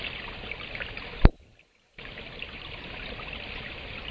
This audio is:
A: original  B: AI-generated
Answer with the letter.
A